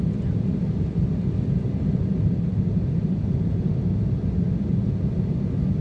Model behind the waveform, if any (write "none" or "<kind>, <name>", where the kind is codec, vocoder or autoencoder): none